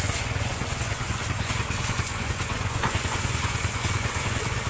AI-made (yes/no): yes